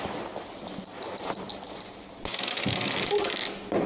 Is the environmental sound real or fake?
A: real